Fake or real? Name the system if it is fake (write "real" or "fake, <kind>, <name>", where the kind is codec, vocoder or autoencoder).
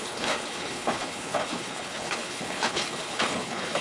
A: fake, codec, HILCodec